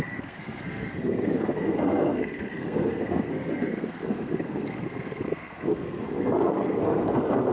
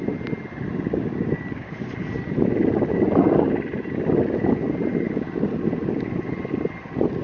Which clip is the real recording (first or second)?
second